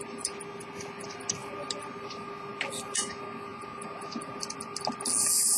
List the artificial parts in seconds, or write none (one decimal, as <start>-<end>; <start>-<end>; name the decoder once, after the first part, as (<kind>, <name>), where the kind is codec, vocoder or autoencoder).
none